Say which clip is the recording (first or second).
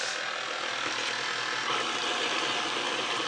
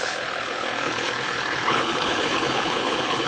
first